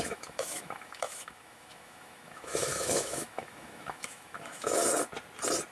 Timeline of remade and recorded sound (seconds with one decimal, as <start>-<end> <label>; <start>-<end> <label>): 0.0-4.8 remade; 4.8-5.7 recorded